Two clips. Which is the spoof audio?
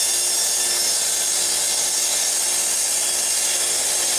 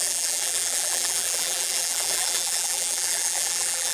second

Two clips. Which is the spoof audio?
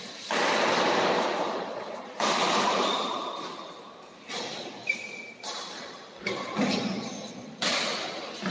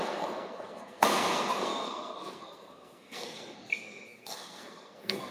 second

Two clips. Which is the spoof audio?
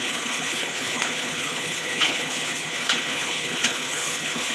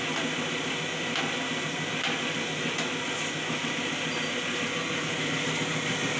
first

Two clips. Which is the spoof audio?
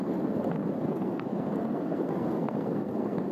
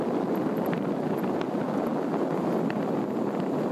first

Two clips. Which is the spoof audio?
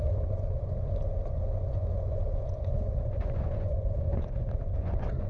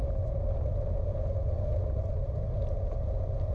first